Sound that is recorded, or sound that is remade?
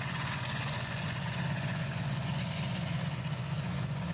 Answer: remade